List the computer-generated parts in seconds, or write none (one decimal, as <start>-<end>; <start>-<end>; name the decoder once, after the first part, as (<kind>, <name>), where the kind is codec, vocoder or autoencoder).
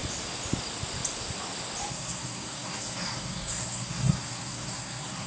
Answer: 1.9-5.3 (codec, SNAC)